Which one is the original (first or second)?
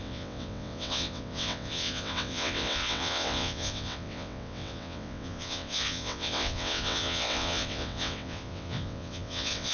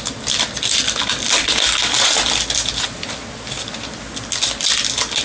second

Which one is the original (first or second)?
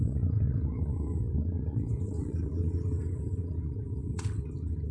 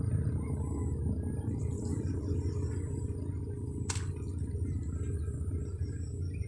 second